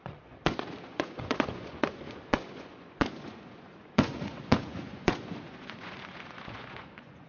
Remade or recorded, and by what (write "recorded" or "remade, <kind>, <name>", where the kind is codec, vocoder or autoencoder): remade, vocoder, Vocos